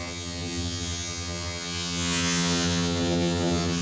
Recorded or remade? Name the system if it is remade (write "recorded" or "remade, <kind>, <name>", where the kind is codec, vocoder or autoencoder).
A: remade, vocoder, HiFi-GAN